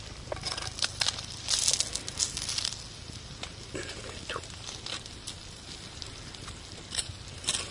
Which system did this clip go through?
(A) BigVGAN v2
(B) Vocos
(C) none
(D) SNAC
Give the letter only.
C